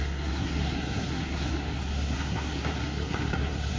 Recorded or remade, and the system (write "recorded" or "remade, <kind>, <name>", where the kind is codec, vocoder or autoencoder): remade, codec, SNAC